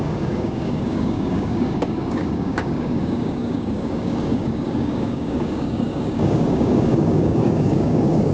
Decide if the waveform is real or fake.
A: fake